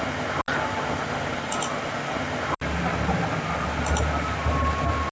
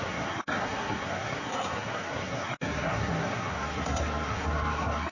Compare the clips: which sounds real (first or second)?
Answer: first